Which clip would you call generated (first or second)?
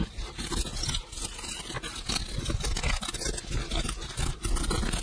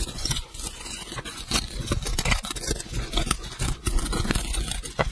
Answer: second